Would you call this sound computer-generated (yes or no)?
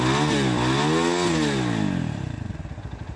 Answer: no